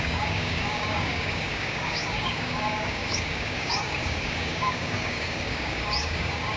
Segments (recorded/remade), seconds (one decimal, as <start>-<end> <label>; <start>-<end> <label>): 0.0-6.6 remade